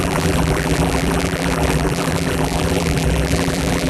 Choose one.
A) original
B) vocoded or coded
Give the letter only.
B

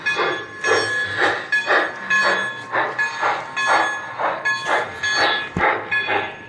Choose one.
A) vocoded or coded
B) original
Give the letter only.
B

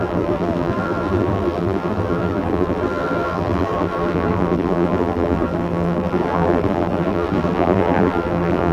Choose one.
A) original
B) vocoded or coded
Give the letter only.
B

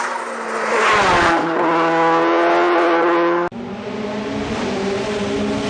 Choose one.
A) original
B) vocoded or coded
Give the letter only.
A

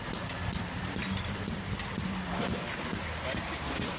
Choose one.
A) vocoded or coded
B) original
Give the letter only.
A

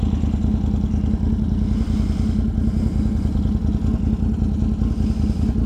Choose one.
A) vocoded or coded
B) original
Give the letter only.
B